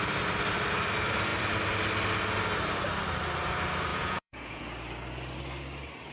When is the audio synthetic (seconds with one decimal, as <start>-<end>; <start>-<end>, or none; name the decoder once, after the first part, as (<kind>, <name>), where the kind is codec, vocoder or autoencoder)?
3.9-4.6 (vocoder, Vocos)